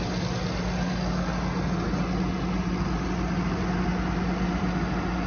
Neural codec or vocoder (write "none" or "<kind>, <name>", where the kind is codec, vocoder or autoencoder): none